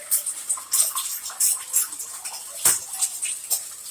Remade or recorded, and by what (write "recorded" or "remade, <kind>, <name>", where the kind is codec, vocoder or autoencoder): recorded